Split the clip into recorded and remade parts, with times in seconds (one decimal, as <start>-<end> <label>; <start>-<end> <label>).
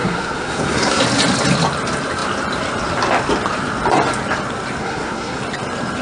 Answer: 0.0-1.0 remade; 1.0-4.8 recorded; 4.8-5.4 remade; 5.4-6.0 recorded